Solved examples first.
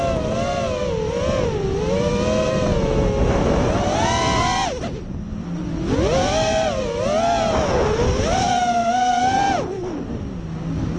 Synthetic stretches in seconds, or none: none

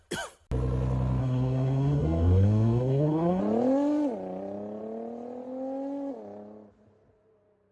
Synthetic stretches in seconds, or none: 1.2-3.4 (codec, SNAC)

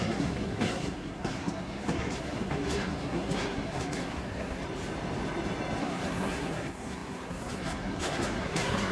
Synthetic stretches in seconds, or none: 0.0-4.6 (codec, SNAC); 5.8-8.9

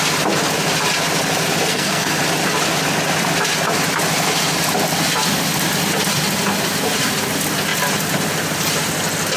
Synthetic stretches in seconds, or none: 1.7-2.2 (codec, SNAC)

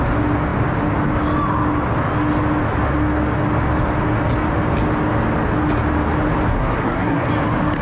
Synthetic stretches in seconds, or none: 6.5-7.3 (codec, SNAC)

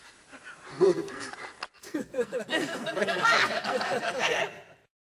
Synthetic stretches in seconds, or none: 0.7-1.3 (codec, SNAC); 1.8-4.4

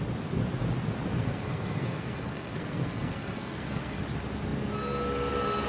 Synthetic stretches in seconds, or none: 1.1-4.0 (codec, SNAC)

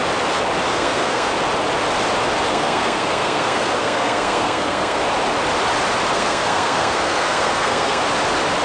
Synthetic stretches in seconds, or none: 0.7-1.3 (codec, SNAC); 2.5-5.0; 6.1-8.0